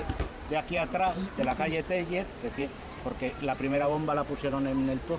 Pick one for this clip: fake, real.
fake